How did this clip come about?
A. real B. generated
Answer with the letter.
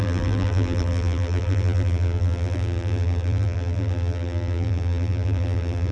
B